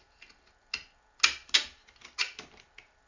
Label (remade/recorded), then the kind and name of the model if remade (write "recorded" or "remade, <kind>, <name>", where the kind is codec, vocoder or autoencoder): recorded